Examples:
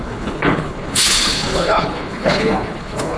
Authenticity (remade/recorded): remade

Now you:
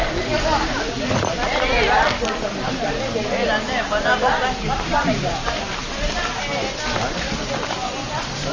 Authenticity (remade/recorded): recorded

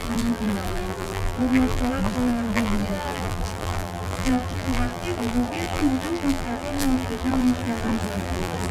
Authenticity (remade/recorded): remade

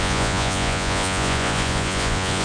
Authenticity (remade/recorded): remade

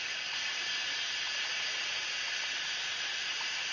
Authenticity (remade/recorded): recorded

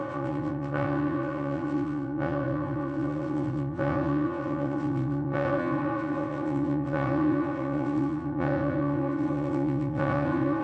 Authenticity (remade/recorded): remade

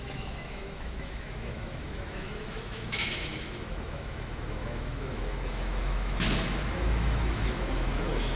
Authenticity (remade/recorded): remade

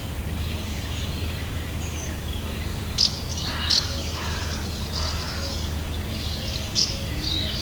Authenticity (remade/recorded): remade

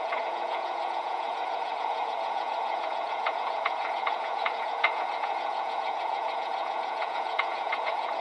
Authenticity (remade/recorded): remade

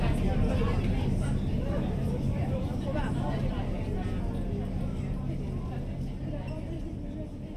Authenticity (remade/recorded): recorded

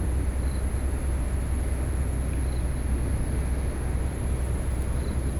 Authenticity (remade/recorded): recorded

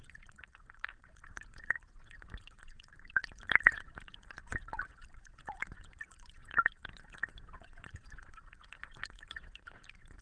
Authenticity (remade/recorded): remade